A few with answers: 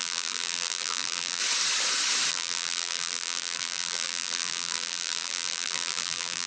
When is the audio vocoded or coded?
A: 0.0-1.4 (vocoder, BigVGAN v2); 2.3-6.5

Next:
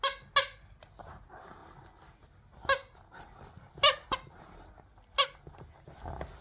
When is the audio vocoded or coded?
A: none

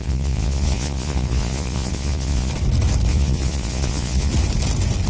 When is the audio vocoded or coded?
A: 0.0-2.5 (vocoder, Vocos); 3.1-4.3

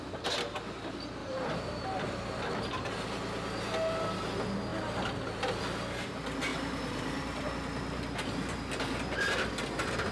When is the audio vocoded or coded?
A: 1.2-2.9 (vocoder, BigVGAN v2); 6.5-7.4

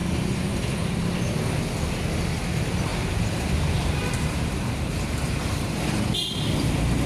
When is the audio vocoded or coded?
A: 0.0-0.6 (vocoder, BigVGAN v2); 2.9-5.8